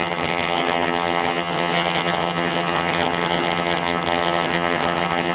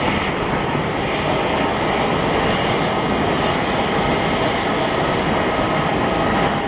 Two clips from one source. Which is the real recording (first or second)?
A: second